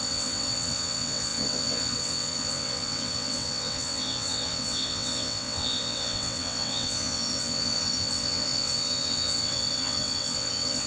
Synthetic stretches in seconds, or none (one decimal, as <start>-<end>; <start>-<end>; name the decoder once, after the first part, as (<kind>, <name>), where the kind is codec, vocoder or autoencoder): 0.0-10.9 (vocoder, WaveNeXt)